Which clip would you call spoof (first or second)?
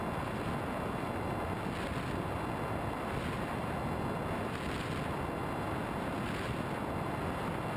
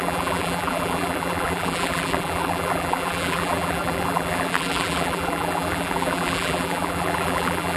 second